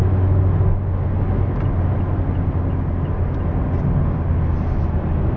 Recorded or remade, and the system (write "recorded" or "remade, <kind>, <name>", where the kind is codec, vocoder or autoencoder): recorded